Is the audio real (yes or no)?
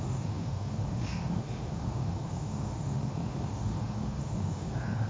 no